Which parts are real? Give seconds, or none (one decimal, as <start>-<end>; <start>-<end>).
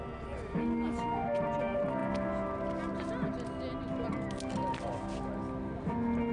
0.0-6.3